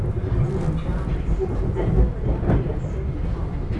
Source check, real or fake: real